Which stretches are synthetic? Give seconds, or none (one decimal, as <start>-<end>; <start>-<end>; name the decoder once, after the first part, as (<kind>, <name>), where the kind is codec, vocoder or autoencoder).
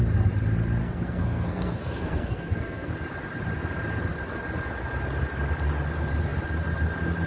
0.8-2.9 (codec, SNAC)